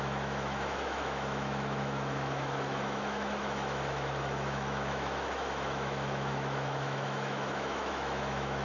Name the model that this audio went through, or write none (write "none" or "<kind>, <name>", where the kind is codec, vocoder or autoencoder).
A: autoencoder, DAC-VAE